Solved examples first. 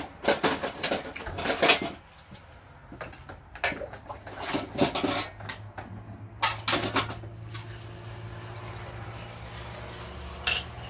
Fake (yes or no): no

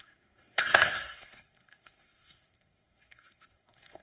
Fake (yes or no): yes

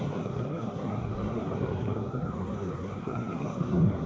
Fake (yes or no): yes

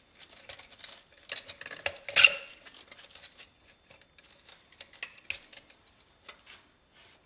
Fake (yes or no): no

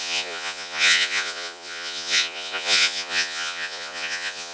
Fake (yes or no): yes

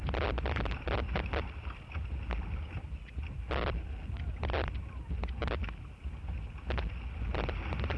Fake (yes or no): no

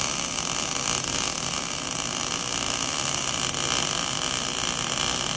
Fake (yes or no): no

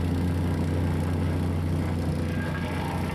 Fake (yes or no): no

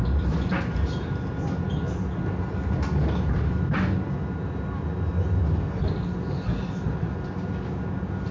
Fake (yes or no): no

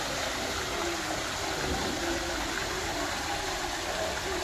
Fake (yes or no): no